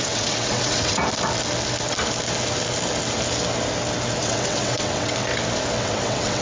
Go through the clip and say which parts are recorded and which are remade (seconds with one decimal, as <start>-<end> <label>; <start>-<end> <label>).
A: 0.0-1.0 remade; 1.0-4.2 recorded; 4.2-5.3 remade; 5.3-5.8 recorded; 5.8-6.4 remade

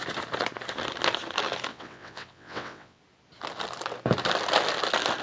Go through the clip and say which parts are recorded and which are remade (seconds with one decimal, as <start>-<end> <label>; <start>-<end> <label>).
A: 0.0-1.7 recorded; 1.7-3.0 remade; 3.0-5.2 recorded

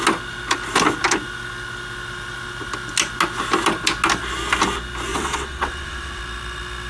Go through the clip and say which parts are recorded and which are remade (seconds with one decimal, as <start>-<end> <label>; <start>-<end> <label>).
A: 0.0-5.1 recorded; 5.1-6.2 remade; 6.2-6.9 recorded

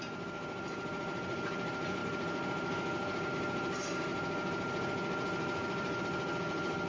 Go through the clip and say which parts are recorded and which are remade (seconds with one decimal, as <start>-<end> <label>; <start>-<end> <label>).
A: 0.0-6.9 recorded

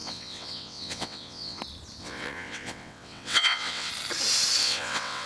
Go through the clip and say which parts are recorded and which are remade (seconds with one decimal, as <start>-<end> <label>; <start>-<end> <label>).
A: 0.0-1.6 remade; 1.6-2.0 recorded; 2.0-3.9 remade; 3.9-4.6 recorded; 4.6-5.3 remade

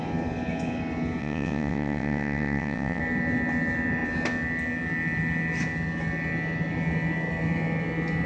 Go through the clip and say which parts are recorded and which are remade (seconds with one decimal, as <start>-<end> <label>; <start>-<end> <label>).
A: 0.0-1.2 recorded; 1.2-3.0 remade; 3.0-8.3 recorded

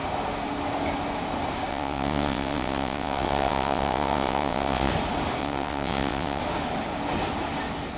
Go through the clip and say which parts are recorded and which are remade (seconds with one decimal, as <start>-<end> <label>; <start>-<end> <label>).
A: 0.0-1.7 recorded; 1.7-4.9 remade; 4.9-5.4 recorded; 5.4-6.4 remade; 6.4-8.0 recorded